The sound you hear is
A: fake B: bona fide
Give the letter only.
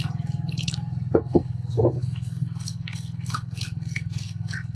A